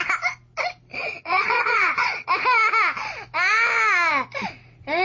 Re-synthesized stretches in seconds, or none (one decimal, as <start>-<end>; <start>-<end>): 1.0-2.3